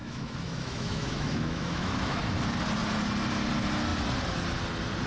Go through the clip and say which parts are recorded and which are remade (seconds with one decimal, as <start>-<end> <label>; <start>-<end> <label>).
0.0-2.2 remade; 2.2-5.1 recorded